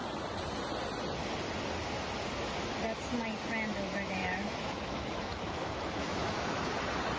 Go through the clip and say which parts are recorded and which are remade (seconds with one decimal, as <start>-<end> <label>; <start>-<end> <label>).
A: 0.0-4.2 recorded; 4.2-6.7 remade; 6.7-7.2 recorded